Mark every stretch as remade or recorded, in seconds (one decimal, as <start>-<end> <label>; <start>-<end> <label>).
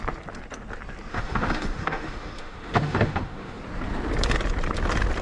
0.0-1.1 recorded; 1.1-3.6 remade; 3.6-5.2 recorded